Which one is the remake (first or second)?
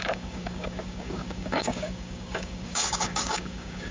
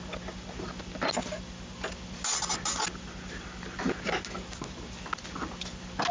first